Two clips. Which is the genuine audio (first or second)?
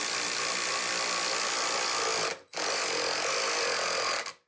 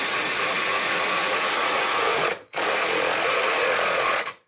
first